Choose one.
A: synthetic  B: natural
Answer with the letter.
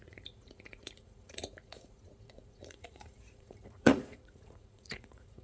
A